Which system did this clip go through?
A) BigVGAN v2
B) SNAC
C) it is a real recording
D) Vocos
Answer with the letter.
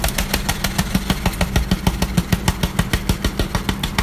C